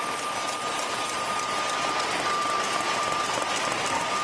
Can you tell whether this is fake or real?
real